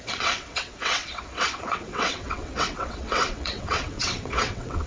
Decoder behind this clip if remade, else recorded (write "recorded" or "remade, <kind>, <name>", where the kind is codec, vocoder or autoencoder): remade, vocoder, WaveNeXt